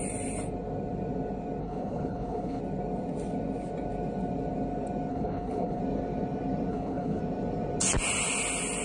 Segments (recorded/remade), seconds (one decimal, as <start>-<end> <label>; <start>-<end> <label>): 0.0-1.6 recorded; 1.6-2.6 remade; 2.6-5.1 recorded; 5.1-5.8 remade; 5.8-6.7 recorded; 6.7-7.2 remade; 7.2-8.8 recorded